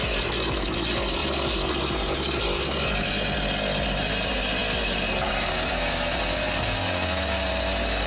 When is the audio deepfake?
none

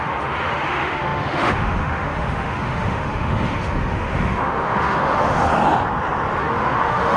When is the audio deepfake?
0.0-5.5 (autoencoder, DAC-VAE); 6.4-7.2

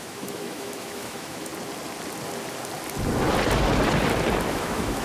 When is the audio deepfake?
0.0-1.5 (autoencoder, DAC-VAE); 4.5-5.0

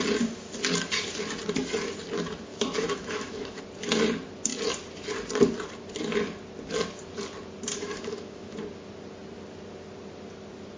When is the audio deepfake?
2.5-3.6 (autoencoder, DAC-VAE); 7.7-8.6